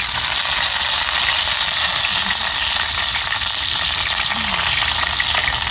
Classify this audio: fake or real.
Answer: real